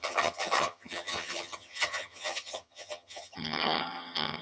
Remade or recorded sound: remade